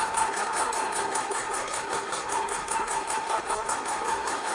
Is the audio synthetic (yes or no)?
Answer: yes